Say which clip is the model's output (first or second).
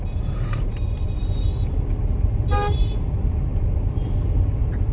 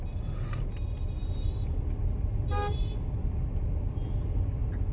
first